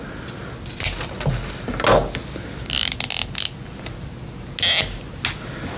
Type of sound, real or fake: real